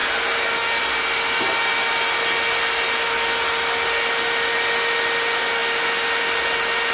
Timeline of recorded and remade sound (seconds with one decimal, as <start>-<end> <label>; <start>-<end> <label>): 0.0-6.9 recorded